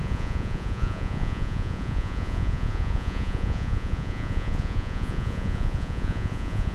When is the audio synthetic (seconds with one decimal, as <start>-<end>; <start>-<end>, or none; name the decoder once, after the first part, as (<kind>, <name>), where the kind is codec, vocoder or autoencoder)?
0.0-6.7 (vocoder, Vocos)